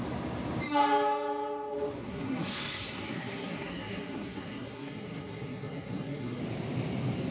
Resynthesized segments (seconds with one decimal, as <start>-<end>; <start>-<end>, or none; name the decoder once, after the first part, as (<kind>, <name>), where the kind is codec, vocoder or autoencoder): 2.0-6.4 (codec, SNAC)